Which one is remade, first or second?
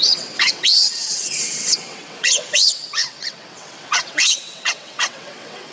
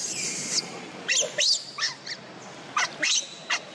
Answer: first